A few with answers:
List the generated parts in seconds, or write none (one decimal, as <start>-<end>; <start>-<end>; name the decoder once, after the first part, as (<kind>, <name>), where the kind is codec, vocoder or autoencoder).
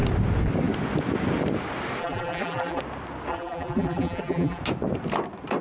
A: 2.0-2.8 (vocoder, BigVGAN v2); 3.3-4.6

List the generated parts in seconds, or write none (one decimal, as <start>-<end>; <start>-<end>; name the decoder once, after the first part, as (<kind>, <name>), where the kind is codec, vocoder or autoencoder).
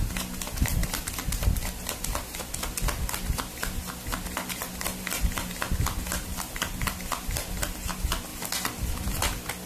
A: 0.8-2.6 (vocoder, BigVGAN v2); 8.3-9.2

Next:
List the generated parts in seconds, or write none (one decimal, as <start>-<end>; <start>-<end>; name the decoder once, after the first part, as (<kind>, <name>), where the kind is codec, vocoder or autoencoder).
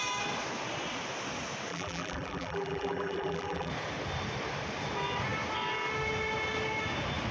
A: 1.7-3.7 (vocoder, BigVGAN v2)